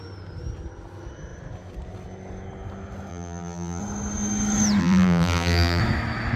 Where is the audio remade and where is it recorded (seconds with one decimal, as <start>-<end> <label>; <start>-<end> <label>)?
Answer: 0.0-3.1 recorded; 3.1-3.8 remade; 3.8-4.8 recorded; 4.8-5.8 remade; 5.8-6.4 recorded